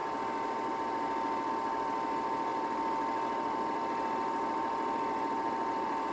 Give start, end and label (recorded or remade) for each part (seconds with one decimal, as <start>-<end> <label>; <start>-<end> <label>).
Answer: 0.0-2.5 recorded; 2.5-6.1 remade